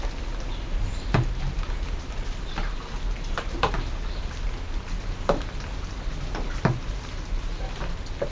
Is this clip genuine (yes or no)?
yes